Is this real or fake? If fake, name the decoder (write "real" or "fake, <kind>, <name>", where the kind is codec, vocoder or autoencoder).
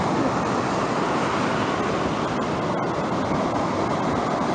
real